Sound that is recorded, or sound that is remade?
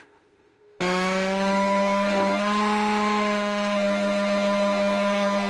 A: remade